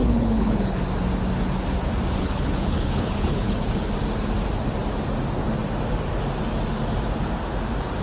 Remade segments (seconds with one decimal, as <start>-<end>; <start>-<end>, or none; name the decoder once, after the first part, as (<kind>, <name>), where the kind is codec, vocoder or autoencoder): 0.0-0.8 (codec, HILCodec); 2.2-3.9